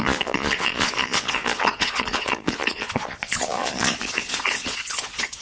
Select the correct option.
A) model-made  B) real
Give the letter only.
A